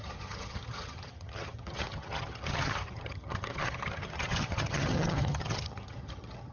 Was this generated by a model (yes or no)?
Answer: yes